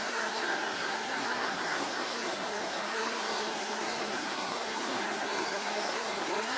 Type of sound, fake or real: fake